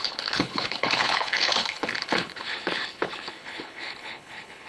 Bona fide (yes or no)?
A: no